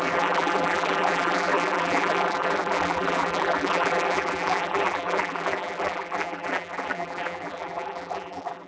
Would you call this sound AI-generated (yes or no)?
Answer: yes